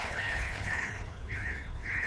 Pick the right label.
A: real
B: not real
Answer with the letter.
B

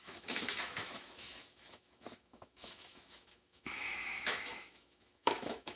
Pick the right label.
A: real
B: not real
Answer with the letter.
B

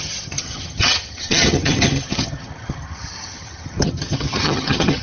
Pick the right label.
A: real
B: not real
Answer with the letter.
B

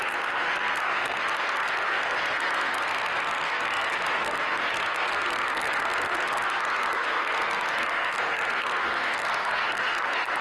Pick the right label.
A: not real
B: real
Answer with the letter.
A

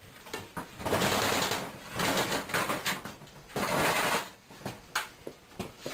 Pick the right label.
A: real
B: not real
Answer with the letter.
A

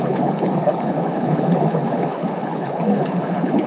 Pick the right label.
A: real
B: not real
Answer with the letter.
B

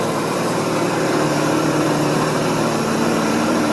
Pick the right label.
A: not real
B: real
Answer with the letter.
A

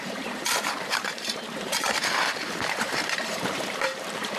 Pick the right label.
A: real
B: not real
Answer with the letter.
B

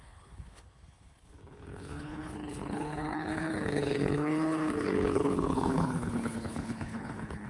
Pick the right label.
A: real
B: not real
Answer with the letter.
B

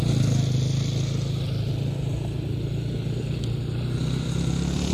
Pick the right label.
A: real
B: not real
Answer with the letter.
A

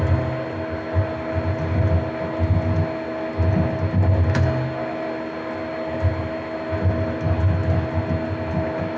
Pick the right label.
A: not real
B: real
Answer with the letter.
B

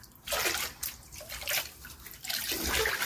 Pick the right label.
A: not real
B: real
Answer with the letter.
B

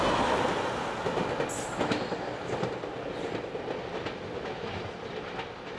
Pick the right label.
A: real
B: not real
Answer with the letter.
A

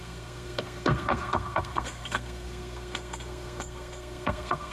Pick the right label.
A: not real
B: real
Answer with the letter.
A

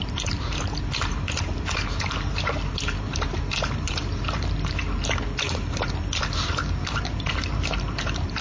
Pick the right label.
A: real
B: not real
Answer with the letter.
B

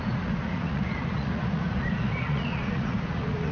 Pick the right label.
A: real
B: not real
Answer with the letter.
B